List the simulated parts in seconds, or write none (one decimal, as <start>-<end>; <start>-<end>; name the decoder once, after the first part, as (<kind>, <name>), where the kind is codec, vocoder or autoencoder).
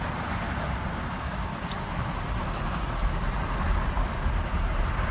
0.9-1.5 (codec, DAC)